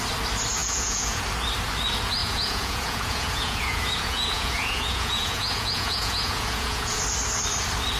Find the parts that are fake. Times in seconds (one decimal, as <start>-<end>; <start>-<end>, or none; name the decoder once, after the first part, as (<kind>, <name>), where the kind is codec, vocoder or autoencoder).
0.6-1.2 (vocoder, Vocos); 2.2-7.0